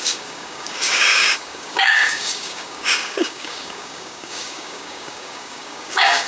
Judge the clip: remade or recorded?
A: remade